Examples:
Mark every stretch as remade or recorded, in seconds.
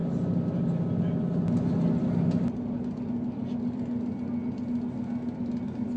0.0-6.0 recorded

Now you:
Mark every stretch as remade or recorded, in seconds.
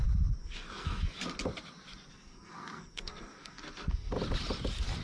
0.0-0.4 recorded; 0.4-1.0 remade; 1.0-2.1 recorded; 2.1-4.1 remade; 4.1-5.0 recorded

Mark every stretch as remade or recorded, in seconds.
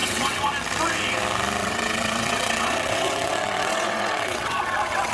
0.0-0.5 remade; 0.5-1.6 recorded; 1.6-5.1 remade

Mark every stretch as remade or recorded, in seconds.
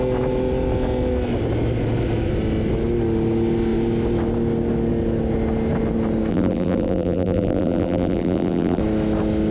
0.0-6.3 recorded; 6.3-8.8 remade; 8.8-9.5 recorded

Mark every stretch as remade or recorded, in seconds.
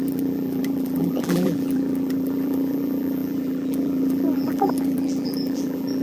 0.0-6.0 remade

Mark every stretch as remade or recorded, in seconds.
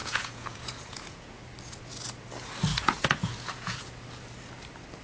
0.0-1.4 remade; 1.4-2.7 recorded; 2.7-3.8 remade; 3.8-5.0 recorded